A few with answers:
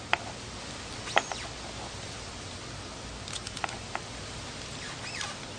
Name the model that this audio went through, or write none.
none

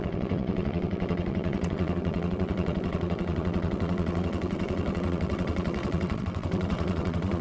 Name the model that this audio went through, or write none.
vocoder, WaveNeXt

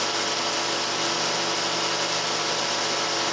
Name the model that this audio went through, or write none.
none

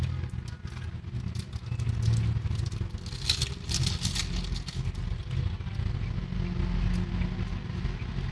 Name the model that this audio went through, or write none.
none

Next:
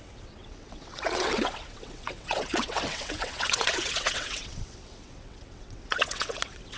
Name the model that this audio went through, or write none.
vocoder, WaveNeXt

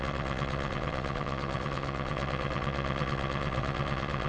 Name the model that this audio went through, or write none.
vocoder, WaveNeXt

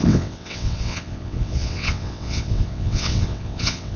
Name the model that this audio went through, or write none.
vocoder, WaveNeXt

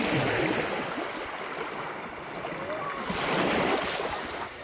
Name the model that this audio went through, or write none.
none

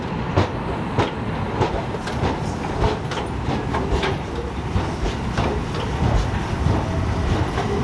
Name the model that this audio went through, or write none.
none